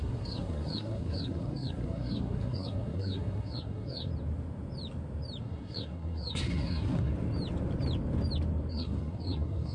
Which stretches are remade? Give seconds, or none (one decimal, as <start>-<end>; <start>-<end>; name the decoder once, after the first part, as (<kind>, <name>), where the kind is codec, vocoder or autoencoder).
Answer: 0.0-4.1 (codec, SNAC); 5.4-7.1; 8.7-9.7